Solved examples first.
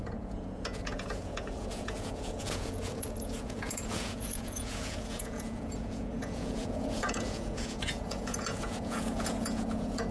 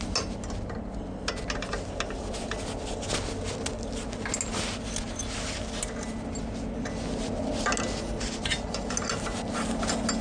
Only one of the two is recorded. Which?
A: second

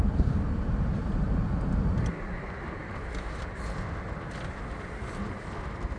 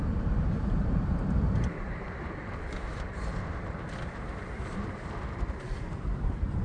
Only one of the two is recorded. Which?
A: first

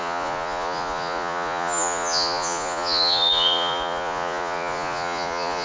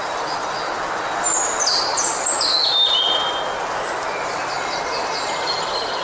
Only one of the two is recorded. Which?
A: second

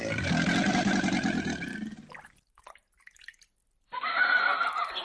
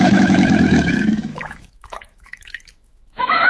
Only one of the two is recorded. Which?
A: first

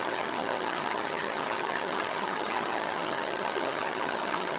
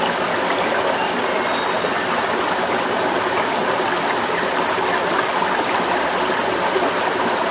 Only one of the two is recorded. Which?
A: second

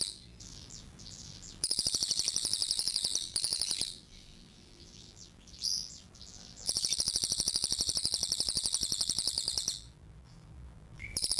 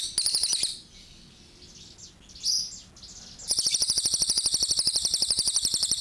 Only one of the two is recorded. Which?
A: second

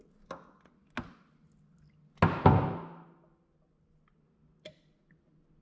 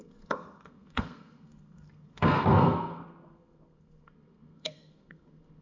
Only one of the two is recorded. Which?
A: first